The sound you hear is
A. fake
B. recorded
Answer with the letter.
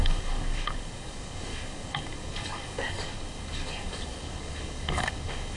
A